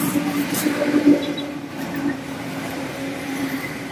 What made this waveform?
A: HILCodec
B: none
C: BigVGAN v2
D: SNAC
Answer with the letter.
C